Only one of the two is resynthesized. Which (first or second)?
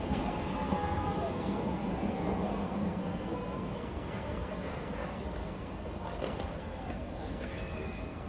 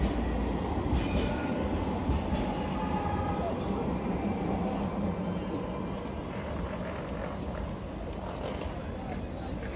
first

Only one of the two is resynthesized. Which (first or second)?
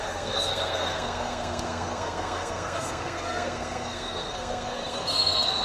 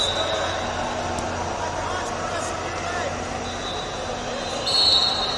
first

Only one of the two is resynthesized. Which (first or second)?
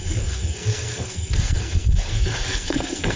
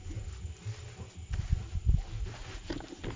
first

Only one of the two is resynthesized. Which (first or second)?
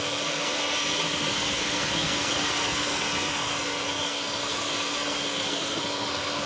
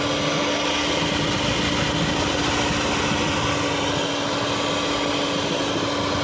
first